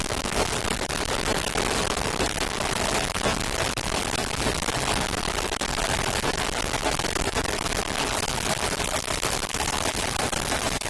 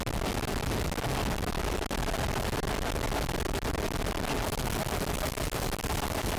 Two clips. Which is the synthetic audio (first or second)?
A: first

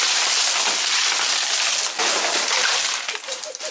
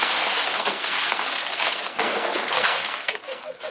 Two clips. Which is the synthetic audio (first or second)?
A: second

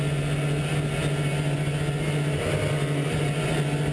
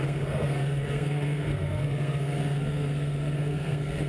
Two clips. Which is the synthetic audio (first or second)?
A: second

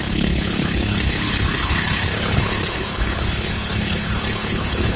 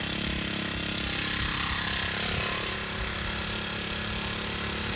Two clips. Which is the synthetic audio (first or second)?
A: first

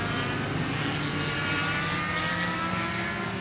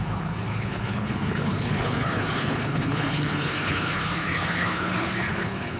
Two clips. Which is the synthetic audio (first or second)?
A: second